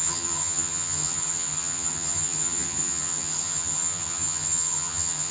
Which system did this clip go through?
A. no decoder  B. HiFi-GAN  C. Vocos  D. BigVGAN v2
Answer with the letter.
B